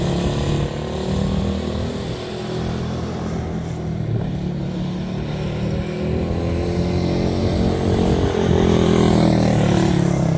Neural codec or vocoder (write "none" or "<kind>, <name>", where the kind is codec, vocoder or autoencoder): none